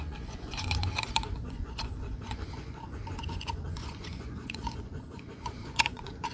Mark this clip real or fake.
fake